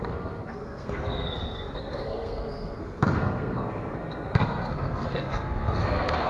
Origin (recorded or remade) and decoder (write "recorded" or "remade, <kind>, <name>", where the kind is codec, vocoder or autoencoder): remade, codec, SNAC